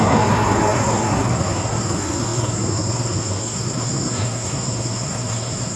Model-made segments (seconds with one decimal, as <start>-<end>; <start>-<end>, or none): 0.0-5.8